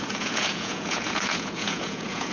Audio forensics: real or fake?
fake